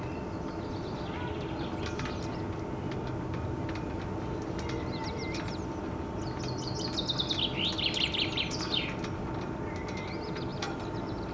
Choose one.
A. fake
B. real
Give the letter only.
B